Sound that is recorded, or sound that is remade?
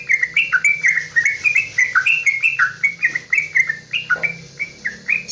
recorded